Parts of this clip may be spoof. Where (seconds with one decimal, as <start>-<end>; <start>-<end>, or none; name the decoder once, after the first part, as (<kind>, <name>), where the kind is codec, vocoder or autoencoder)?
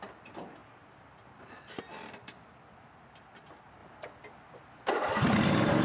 none